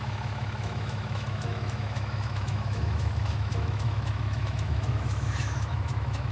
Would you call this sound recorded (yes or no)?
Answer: no